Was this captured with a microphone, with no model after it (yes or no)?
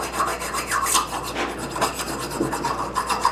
yes